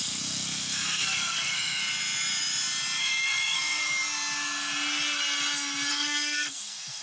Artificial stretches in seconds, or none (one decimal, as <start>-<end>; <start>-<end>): 0.0-1.8; 3.0-3.8; 5.9-7.0